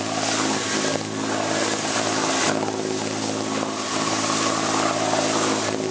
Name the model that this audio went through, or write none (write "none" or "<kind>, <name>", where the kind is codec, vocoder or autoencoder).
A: none